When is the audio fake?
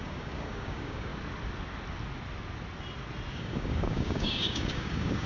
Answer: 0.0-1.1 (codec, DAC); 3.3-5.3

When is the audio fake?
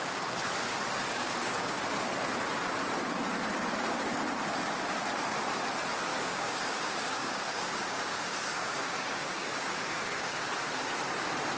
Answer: 1.1-1.8 (codec, DAC); 6.1-10.4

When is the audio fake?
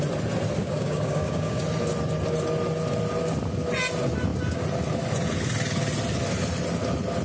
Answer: 0.6-1.6 (codec, DAC)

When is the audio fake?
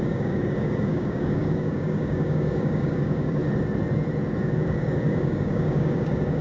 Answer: 0.0-3.4 (codec, DAC); 4.4-6.4